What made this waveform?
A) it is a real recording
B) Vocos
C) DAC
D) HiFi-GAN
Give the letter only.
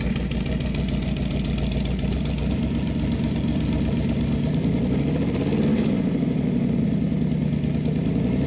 A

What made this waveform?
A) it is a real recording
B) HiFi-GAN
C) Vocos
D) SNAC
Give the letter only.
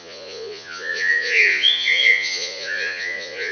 C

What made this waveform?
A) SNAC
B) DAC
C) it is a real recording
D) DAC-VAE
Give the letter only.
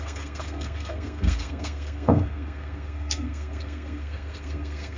A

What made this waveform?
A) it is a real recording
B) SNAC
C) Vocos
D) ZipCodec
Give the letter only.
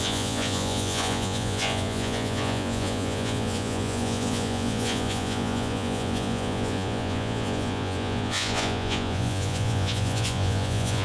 C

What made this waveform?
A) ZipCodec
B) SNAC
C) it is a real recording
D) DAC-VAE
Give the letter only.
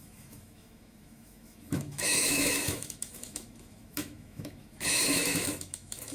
D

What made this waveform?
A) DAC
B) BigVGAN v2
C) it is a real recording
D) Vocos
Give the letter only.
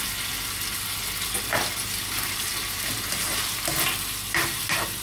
C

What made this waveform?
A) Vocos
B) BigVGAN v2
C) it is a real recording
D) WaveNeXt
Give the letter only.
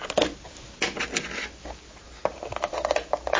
C